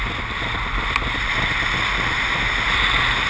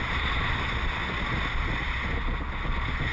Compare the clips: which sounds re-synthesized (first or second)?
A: second